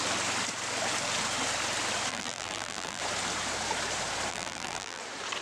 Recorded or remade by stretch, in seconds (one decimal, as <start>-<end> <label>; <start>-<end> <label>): 0.0-2.1 recorded; 2.1-3.0 remade; 3.0-4.3 recorded; 4.3-5.0 remade; 5.0-5.4 recorded

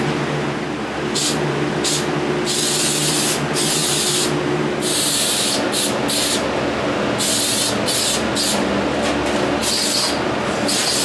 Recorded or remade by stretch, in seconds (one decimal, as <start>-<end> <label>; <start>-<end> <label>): 0.0-11.0 recorded

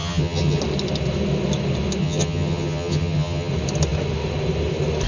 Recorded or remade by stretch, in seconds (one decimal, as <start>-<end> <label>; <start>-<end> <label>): 0.0-0.6 remade; 0.6-2.0 recorded; 2.0-3.5 remade; 3.5-5.1 recorded